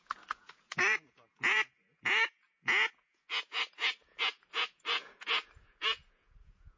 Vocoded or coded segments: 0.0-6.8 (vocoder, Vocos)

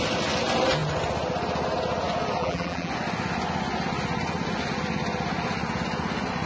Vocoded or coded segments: 2.4-2.9 (vocoder, BigVGAN v2)

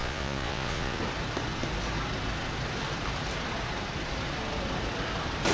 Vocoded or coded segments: 0.0-1.0 (vocoder, Vocos)

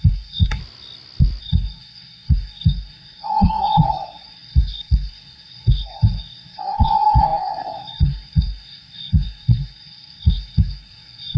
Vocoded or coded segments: 0.0-0.6 (codec, SNAC); 1.4-11.4